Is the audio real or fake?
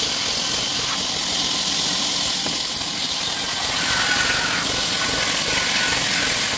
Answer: real